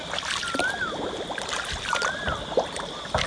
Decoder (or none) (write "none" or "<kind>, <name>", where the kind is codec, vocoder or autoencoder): none